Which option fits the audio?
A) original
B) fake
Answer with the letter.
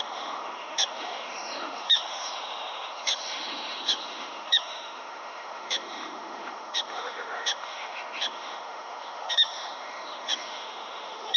B